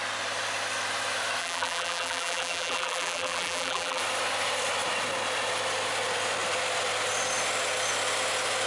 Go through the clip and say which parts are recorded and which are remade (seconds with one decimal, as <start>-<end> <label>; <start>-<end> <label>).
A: 0.0-1.4 recorded; 1.4-4.0 remade; 4.0-8.7 recorded